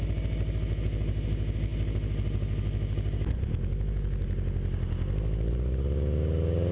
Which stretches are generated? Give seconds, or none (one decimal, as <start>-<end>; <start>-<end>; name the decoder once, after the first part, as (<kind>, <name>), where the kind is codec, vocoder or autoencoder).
none